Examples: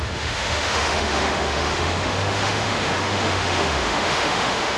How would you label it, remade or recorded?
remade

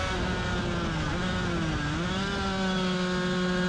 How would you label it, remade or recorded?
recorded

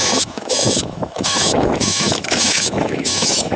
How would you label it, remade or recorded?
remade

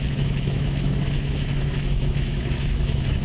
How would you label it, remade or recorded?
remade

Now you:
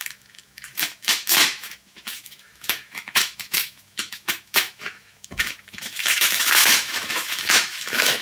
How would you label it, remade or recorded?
remade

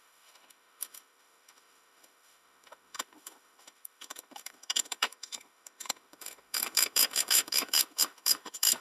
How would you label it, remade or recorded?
remade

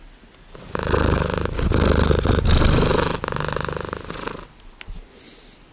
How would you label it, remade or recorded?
recorded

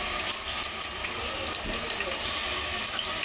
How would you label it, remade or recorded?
recorded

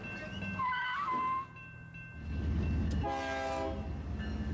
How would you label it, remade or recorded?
recorded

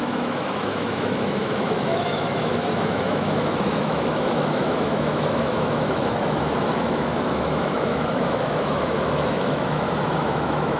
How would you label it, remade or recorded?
remade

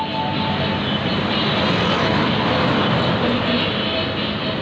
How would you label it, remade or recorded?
recorded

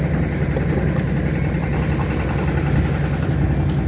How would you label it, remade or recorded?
recorded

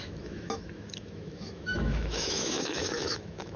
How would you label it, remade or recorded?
remade